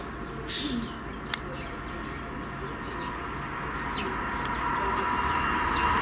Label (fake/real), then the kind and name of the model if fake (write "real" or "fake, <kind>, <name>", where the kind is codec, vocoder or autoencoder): real